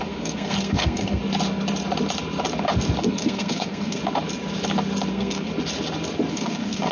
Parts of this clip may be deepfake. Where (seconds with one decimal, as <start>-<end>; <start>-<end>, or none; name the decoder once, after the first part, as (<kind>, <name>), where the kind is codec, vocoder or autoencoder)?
0.0-1.2 (codec, SNAC); 3.0-4.0; 5.1-5.5; 6.3-6.9